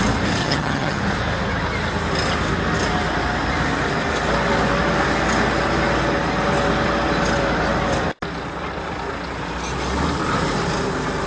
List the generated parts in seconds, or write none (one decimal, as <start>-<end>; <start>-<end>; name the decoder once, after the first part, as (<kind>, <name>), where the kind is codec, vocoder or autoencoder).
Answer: 0.4-1.0 (vocoder, HiFi-GAN)